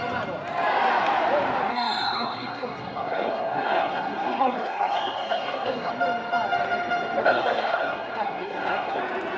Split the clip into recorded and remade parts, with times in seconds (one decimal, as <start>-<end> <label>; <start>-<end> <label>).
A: 0.0-1.7 recorded; 1.7-5.9 remade; 5.9-7.2 recorded; 7.2-9.0 remade; 9.0-9.4 recorded